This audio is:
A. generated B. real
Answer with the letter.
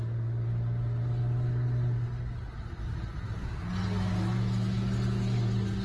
B